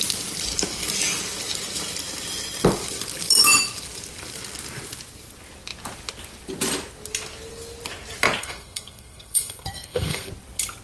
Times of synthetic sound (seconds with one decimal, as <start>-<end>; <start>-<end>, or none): 8.4-10.3